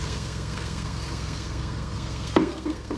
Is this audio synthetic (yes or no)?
yes